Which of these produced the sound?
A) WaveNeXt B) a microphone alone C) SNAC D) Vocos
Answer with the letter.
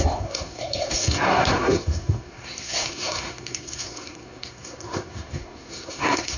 C